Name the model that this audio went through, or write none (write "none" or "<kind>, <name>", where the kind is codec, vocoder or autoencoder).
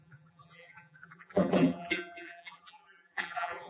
vocoder, BigVGAN v2